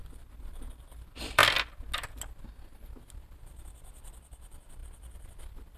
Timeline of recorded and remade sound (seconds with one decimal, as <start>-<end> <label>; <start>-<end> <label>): 0.0-1.4 remade; 1.4-3.1 recorded; 3.1-5.8 remade